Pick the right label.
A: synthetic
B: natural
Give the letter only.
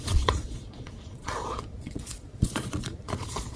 A